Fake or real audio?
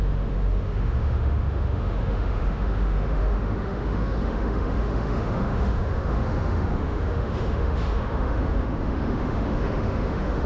fake